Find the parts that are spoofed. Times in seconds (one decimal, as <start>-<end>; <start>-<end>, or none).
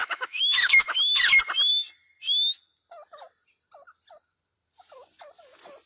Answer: 0.0-1.2